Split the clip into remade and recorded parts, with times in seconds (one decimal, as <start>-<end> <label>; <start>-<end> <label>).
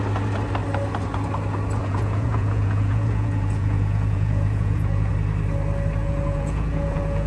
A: 0.0-1.8 recorded; 1.8-5.1 remade; 5.1-6.0 recorded; 6.0-7.3 remade